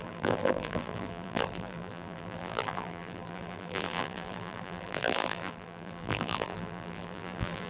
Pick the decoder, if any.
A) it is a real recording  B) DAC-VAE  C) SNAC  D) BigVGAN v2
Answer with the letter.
D